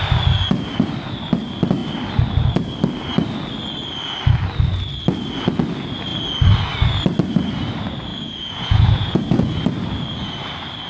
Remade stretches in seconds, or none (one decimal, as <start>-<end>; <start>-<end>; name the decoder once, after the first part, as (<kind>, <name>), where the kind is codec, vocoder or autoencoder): 8.1-9.6 (vocoder, Vocos)